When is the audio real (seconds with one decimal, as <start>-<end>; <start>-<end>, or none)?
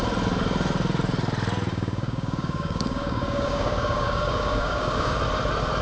0.0-1.7; 5.2-5.8